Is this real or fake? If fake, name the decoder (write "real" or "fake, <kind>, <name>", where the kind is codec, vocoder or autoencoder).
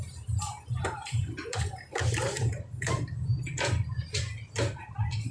fake, vocoder, BigVGAN v2